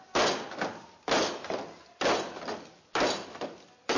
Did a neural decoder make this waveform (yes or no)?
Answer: no